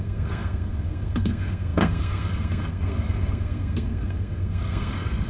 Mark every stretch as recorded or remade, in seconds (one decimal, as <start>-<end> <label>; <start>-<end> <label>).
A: 0.0-5.3 remade